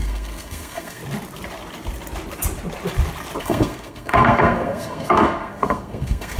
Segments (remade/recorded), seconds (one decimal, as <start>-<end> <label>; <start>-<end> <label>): 0.0-1.0 remade; 1.0-3.4 recorded; 3.4-6.4 remade